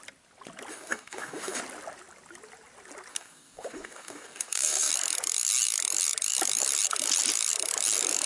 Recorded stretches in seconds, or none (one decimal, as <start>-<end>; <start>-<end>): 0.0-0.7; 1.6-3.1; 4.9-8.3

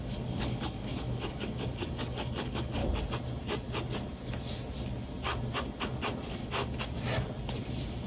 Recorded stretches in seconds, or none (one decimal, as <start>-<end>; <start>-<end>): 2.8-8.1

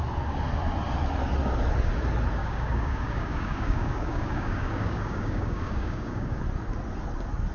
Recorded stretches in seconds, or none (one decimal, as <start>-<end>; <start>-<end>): 0.0-2.4; 6.4-7.5

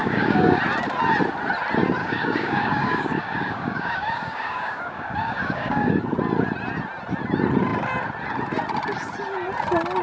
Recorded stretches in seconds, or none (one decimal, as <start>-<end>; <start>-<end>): 0.6-2.0; 6.0-10.0